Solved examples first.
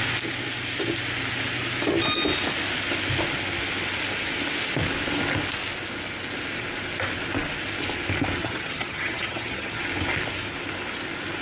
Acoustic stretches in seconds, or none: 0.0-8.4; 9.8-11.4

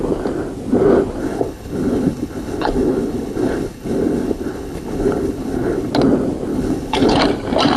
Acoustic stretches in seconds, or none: 0.0-1.2; 5.9-6.5; 7.2-7.8

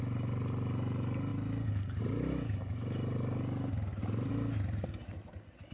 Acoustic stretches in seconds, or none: 0.0-5.7